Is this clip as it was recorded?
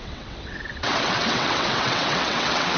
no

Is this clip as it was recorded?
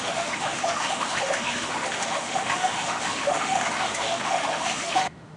no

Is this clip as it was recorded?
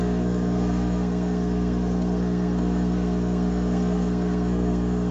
no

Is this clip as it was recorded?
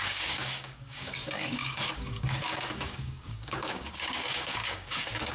no